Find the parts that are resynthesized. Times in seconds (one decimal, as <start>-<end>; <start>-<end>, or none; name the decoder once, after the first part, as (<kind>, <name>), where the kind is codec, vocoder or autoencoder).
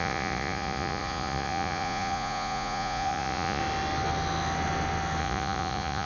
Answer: 0.0-3.6 (vocoder, Vocos); 5.2-6.1